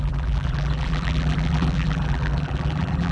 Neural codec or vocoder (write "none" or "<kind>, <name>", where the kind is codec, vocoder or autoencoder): vocoder, BigVGAN v2